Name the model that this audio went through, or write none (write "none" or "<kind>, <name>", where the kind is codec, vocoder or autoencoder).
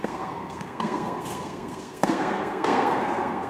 codec, SNAC